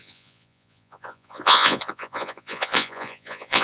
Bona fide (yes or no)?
no